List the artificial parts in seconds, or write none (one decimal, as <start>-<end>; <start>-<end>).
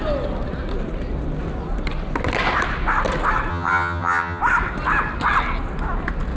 3.5-4.4